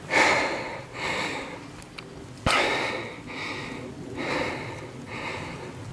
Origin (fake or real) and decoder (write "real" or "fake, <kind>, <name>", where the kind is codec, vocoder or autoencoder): real